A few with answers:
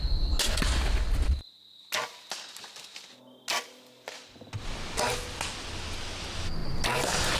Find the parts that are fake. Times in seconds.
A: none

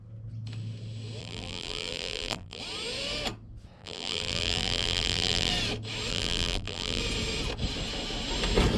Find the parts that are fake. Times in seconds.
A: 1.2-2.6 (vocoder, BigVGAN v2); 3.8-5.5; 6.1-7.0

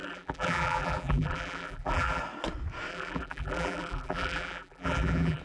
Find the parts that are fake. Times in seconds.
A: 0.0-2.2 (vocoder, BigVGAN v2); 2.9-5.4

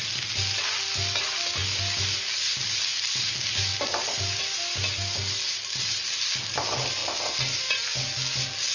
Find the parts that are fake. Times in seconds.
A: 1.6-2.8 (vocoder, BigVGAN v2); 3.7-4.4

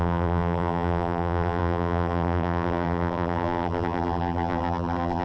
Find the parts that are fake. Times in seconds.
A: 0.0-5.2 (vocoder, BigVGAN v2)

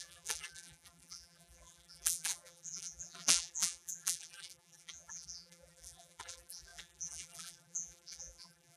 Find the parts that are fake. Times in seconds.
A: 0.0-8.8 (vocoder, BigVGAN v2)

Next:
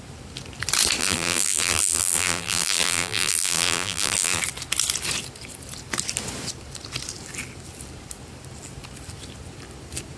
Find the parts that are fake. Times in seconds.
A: 1.0-4.4 (vocoder, BigVGAN v2)